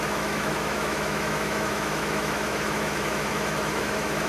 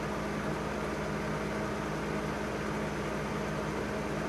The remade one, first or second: first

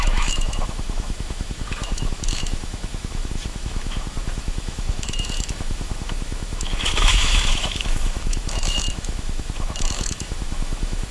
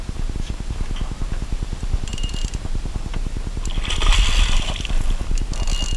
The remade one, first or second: first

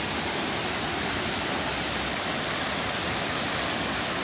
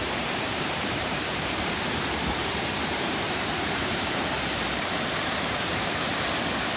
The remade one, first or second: second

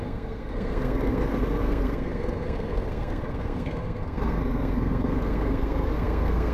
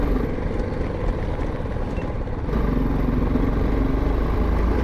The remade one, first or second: first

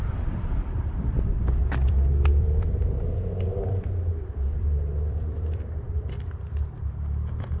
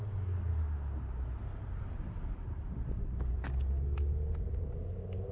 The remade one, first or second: first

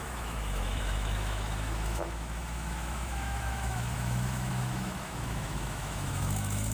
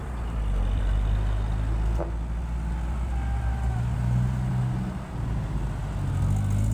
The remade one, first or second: first